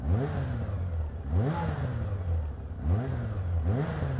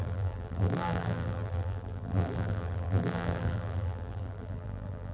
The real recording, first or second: first